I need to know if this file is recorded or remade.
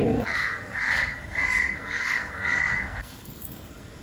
remade